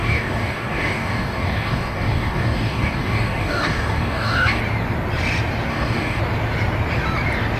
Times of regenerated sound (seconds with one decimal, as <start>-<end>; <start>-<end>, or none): 0.0-4.6; 5.7-6.2